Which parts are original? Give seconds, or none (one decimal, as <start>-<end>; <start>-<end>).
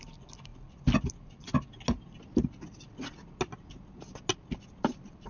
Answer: 0.0-5.3